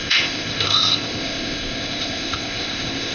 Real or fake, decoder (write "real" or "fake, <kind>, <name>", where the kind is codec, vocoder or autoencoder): fake, codec, ZipCodec